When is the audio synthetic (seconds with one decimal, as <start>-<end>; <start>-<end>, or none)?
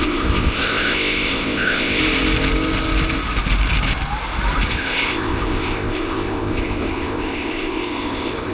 0.0-2.0; 4.7-8.5